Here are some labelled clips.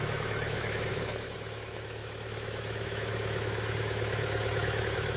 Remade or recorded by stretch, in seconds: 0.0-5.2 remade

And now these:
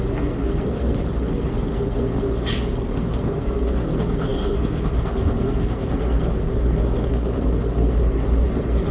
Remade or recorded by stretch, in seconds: 0.0-8.9 remade

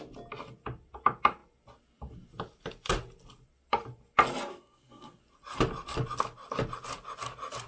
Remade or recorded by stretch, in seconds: 0.0-4.5 recorded; 4.5-5.2 remade; 5.2-7.7 recorded

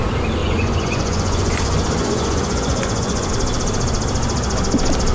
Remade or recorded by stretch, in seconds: 0.0-0.4 recorded; 0.4-3.3 remade; 3.3-5.1 recorded

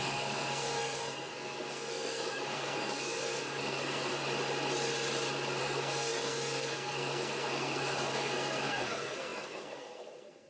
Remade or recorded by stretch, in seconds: 0.0-4.2 remade; 4.2-5.6 recorded; 5.6-10.5 remade

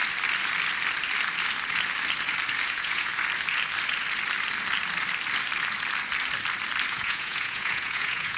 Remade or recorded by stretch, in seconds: 0.0-2.7 recorded; 2.7-3.1 remade; 3.1-6.9 recorded; 6.9-8.4 remade

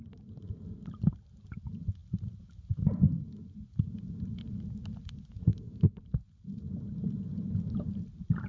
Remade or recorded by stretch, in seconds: 0.0-5.5 recorded; 5.5-6.0 remade; 6.0-8.5 recorded